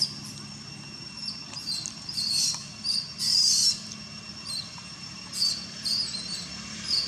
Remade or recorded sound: recorded